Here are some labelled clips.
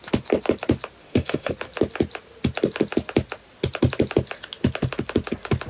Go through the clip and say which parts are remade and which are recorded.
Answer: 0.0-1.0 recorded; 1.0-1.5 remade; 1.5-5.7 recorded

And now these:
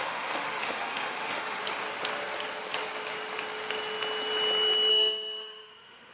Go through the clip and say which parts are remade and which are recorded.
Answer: 0.0-1.6 remade; 1.6-4.9 recorded; 4.9-6.1 remade

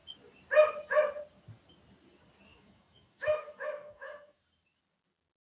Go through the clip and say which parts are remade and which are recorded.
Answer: 0.0-2.5 recorded; 2.5-4.4 remade; 4.4-5.5 recorded

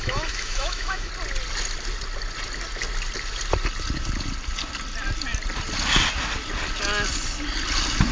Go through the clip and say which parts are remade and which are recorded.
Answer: 0.0-1.1 remade; 1.1-8.1 recorded

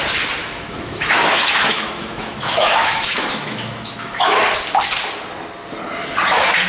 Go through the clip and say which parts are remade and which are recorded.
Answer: 0.0-0.4 recorded; 0.4-4.4 remade; 4.4-6.7 recorded